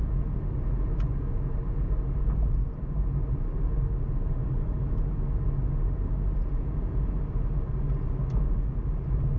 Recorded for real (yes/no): yes